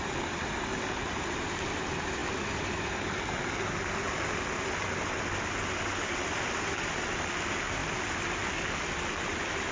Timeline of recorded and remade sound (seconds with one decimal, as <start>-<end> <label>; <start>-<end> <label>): 0.0-9.7 recorded